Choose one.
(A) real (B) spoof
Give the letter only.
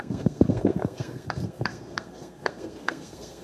B